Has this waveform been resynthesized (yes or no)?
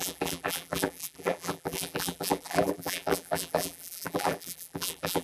yes